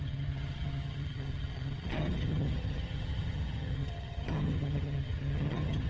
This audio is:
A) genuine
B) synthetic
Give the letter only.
B